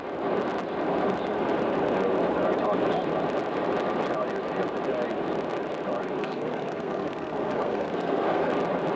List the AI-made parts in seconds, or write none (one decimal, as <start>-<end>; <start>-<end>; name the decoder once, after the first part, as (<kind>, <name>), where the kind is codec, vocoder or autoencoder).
6.2-8.5 (codec, SNAC)